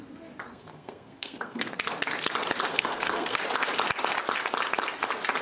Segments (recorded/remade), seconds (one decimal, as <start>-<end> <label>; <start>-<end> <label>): 0.0-0.5 recorded; 0.5-1.7 remade; 1.7-2.7 recorded; 2.7-3.4 remade; 3.4-5.4 recorded